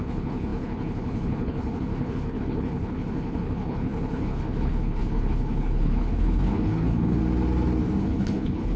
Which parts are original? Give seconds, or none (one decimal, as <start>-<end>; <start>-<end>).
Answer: 7.2-8.0